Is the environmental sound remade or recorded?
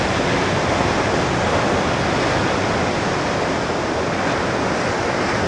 recorded